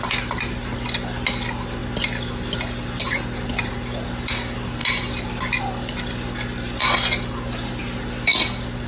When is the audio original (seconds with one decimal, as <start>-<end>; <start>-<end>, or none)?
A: 0.0-8.9